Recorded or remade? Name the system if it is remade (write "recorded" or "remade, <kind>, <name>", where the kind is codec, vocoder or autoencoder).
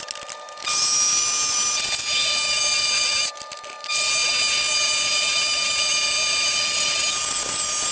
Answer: recorded